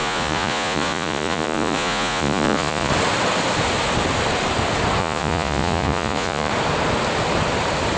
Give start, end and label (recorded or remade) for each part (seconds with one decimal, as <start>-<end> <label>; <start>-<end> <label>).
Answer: 0.0-2.9 remade; 2.9-5.0 recorded; 5.0-6.5 remade; 6.5-8.0 recorded

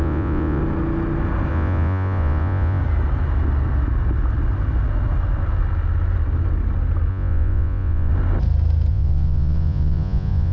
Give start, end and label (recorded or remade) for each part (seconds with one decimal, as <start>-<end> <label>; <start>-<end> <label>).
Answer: 0.0-0.6 remade; 0.6-1.5 recorded; 1.5-2.8 remade; 2.8-7.1 recorded; 7.1-8.1 remade; 8.1-8.9 recorded; 8.9-10.5 remade

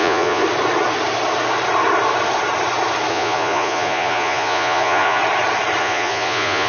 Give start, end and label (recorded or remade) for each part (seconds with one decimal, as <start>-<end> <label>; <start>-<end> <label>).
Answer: 0.0-0.4 remade; 0.4-3.1 recorded; 3.1-5.2 remade; 5.2-5.8 recorded; 5.8-6.7 remade

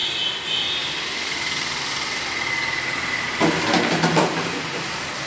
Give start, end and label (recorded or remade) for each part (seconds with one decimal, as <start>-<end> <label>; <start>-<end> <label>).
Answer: 0.0-5.3 recorded

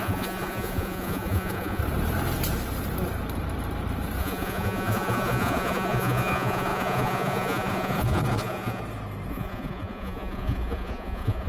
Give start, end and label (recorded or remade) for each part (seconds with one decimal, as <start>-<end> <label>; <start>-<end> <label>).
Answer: 0.0-1.8 remade; 1.8-4.2 recorded; 4.2-8.8 remade; 8.8-9.3 recorded; 9.3-11.5 remade